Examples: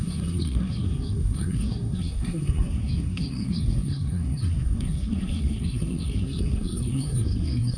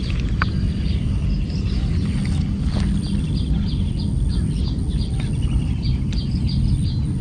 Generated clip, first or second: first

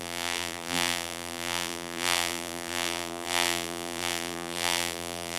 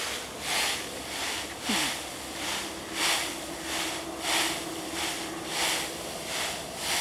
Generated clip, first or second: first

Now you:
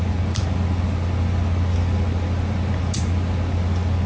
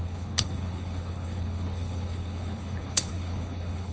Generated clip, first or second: second